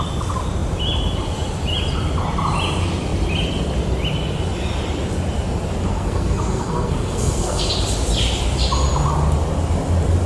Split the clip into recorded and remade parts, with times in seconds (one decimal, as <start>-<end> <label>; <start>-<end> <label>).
0.0-5.9 recorded; 5.9-7.7 remade; 7.7-10.3 recorded